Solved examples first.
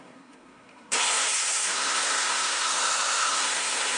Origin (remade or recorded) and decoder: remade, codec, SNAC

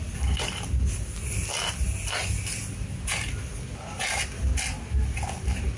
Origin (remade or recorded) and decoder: recorded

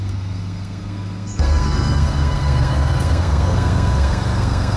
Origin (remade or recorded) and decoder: remade, codec, SNAC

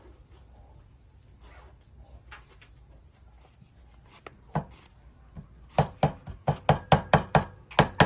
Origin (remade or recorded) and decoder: recorded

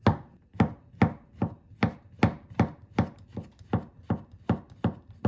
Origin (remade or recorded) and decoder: recorded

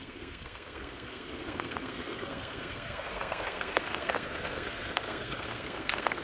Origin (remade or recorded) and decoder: remade, codec, SNAC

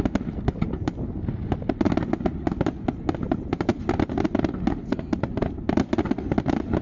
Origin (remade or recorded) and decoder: recorded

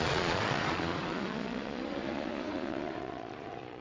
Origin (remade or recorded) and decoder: remade, vocoder, Vocos